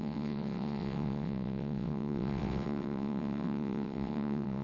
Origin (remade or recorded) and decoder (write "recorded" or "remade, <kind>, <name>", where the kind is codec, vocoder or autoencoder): remade, vocoder, WaveNeXt